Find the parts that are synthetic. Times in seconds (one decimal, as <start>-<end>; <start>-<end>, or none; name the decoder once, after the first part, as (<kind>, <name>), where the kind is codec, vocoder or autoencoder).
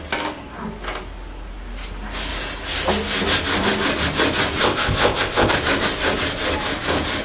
4.6-5.5 (codec, ZipCodec)